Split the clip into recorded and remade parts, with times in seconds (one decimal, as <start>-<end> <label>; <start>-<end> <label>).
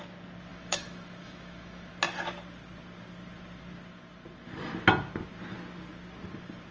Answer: 0.0-0.5 recorded; 0.5-1.9 remade; 1.9-6.7 recorded